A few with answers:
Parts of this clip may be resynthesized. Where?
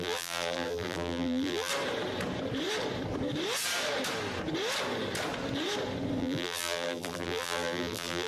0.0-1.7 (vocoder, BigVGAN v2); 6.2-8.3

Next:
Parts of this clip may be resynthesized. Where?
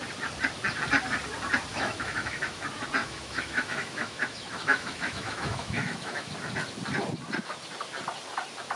1.7-2.6 (autoencoder, DAC-VAE); 3.0-6.3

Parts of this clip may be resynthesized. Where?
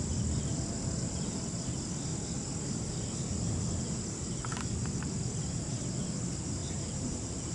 6.6-7.5 (vocoder, BigVGAN v2)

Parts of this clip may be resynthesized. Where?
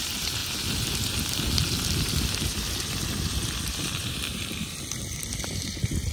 0.0-0.4 (vocoder, BigVGAN v2); 2.0-6.1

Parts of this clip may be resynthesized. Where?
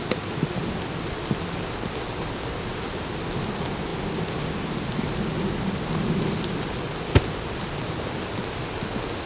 none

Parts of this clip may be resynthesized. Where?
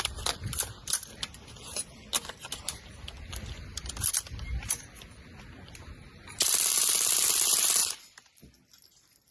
none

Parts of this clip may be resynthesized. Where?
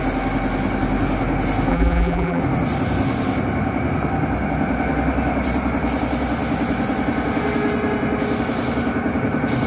1.7-2.4 (vocoder, BigVGAN v2)